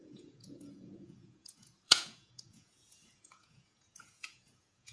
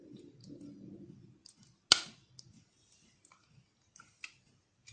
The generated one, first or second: first